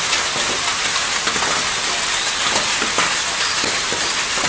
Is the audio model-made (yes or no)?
no